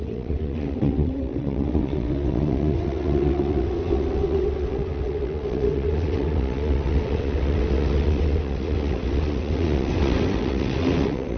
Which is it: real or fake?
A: fake